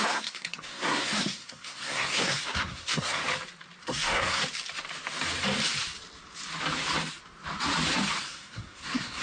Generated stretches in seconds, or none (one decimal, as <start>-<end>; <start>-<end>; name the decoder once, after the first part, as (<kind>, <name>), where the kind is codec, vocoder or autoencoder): 0.0-3.2 (codec, SNAC); 3.8-4.4; 8.2-9.2